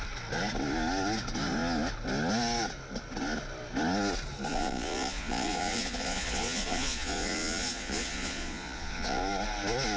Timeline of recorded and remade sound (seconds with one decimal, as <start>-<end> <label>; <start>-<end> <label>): 0.0-4.5 recorded; 4.5-9.2 remade; 9.2-10.0 recorded